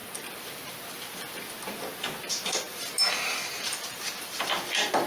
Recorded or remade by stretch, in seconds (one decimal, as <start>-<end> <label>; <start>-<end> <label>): 0.0-5.1 recorded